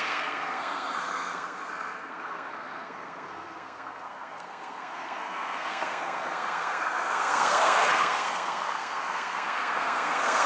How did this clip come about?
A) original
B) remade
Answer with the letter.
B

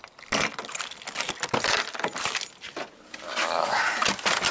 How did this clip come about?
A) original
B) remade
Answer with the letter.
A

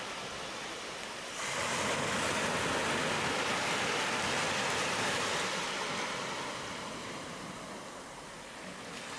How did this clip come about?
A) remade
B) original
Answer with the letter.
B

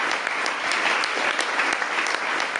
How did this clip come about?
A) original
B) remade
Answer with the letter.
A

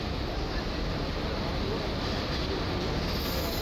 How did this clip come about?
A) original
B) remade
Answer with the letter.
A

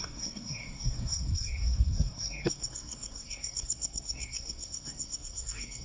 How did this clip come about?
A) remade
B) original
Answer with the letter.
A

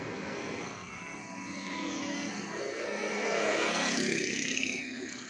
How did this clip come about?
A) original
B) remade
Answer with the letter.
B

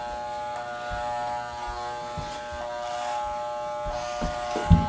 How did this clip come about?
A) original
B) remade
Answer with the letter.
A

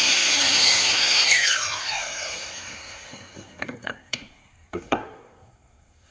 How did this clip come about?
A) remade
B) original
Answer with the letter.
A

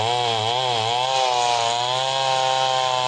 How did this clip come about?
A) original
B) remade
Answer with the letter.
A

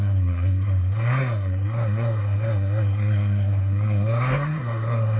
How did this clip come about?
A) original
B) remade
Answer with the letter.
B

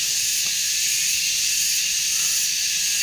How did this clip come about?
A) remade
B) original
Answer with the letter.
B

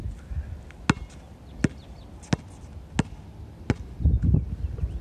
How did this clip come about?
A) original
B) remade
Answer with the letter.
A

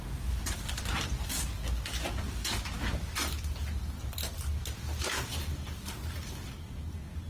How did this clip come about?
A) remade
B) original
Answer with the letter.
B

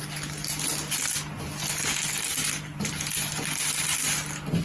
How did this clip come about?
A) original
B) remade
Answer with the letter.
A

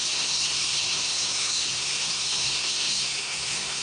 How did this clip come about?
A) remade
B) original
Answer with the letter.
A